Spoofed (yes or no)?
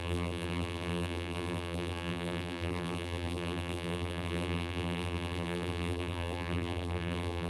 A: yes